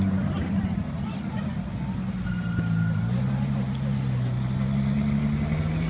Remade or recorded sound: recorded